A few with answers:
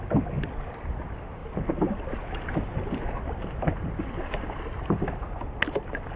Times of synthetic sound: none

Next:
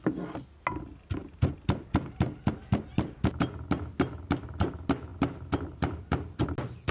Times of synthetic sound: none

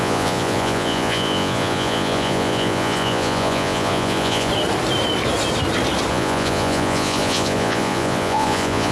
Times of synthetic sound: 0.0-4.5 (vocoder, Vocos); 6.1-8.9

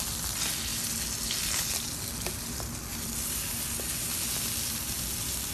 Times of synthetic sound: none

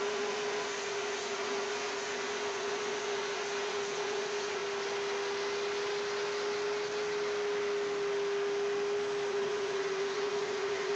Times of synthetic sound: 0.0-4.6 (vocoder, Vocos); 9.3-11.0

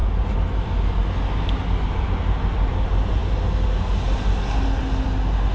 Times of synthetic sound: none

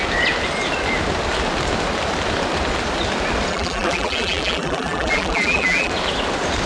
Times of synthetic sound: 3.5-5.9 (vocoder, BigVGAN v2)

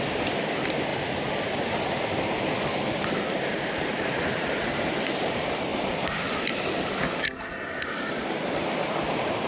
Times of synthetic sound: 0.0-0.9 (vocoder, BigVGAN v2); 3.5-5.7; 9.0-9.5